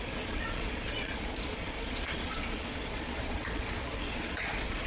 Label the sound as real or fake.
fake